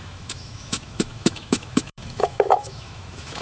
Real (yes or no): no